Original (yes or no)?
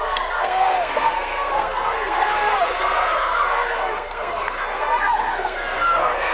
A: no